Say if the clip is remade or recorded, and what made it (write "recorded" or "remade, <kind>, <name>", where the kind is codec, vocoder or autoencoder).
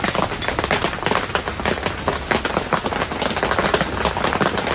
recorded